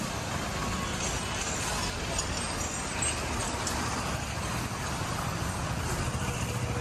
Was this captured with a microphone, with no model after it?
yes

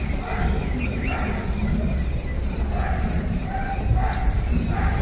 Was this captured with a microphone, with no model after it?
yes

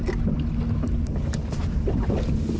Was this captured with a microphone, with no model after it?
yes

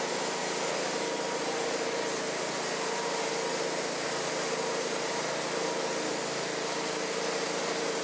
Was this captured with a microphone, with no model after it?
yes